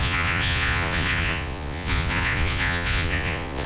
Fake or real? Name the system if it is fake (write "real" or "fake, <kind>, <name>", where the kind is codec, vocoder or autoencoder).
fake, vocoder, Vocos